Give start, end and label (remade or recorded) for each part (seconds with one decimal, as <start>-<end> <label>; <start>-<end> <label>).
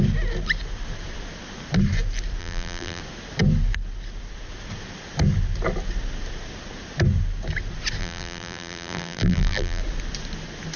0.0-2.4 recorded; 2.4-3.0 remade; 3.0-8.0 recorded; 8.0-9.8 remade; 9.8-10.8 recorded